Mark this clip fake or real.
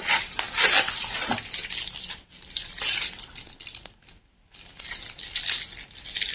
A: real